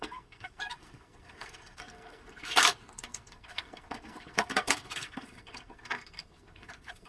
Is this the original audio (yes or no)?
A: no